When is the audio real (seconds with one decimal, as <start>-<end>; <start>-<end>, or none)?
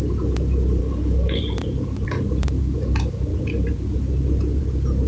0.0-0.8; 1.4-5.1